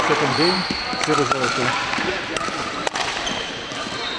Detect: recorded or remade remade